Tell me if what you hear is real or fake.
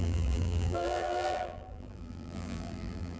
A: fake